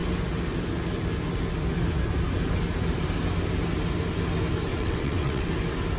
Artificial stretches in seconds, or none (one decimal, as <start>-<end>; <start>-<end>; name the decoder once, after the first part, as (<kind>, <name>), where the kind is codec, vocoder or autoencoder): 4.7-5.5 (vocoder, WaveNeXt)